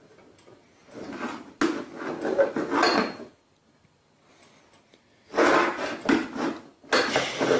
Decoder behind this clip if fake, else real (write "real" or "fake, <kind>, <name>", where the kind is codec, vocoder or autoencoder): real